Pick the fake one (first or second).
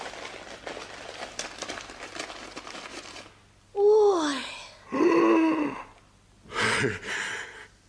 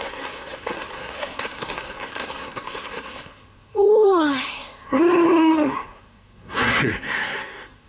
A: second